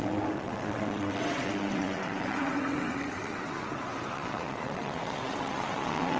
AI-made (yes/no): yes